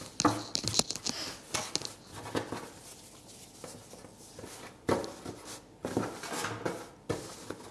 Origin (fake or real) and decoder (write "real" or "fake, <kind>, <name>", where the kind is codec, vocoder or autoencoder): real